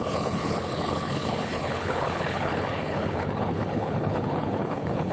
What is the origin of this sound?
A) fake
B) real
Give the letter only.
A